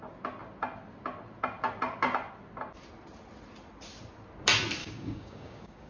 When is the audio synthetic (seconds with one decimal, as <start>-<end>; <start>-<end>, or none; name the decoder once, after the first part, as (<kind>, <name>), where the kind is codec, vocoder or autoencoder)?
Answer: 4.8-5.9 (codec, DAC)